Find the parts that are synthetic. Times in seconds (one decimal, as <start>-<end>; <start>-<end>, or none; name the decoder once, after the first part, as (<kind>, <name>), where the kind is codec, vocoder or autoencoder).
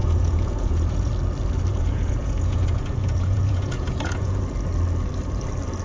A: 0.0-1.1 (vocoder, Vocos); 1.7-4.4